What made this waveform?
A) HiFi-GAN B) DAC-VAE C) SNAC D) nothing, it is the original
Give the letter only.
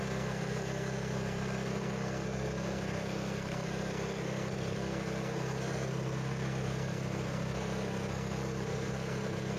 C